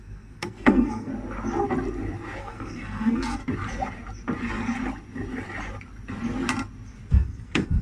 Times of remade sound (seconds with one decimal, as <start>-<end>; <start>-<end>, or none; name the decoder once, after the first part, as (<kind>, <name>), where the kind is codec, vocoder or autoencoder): 0.0-1.1 (codec, SNAC); 2.4-3.4; 7.1-7.8